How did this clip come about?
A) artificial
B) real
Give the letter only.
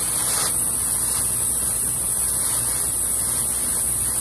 B